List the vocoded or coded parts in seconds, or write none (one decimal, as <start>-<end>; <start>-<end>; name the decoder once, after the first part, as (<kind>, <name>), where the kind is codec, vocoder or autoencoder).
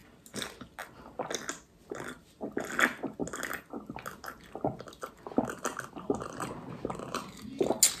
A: none